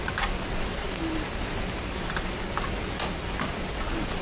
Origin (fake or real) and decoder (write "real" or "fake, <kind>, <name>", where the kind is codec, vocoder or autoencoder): real